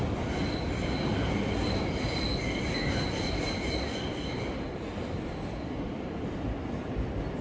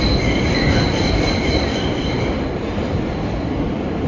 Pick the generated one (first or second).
second